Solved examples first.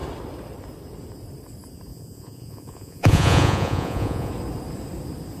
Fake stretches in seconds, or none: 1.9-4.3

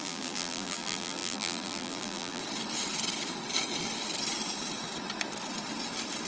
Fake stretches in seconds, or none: 0.0-2.4

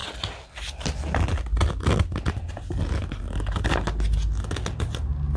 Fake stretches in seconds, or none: none

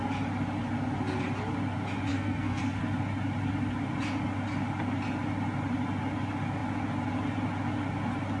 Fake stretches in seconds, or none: 2.1-2.6

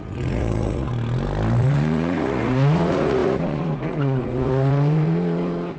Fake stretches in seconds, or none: 0.0-0.9; 1.6-5.8